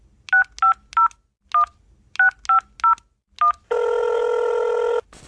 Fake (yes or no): no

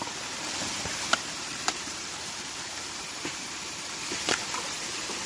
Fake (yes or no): yes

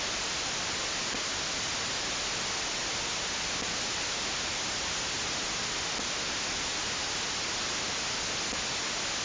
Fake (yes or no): no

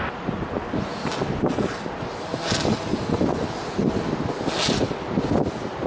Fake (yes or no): no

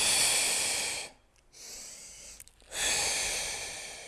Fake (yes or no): no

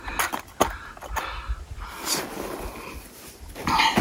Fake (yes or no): no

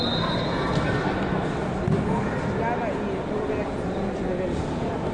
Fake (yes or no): no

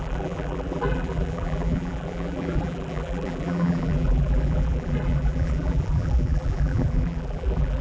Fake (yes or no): yes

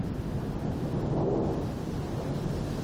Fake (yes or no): no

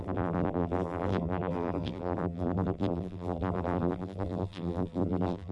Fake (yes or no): yes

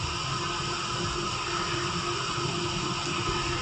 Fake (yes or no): no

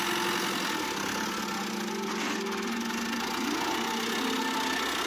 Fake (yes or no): no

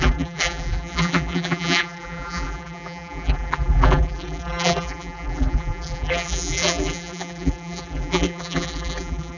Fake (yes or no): yes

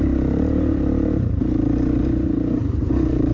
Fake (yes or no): yes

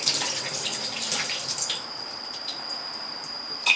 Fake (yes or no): yes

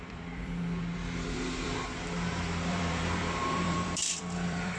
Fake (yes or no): yes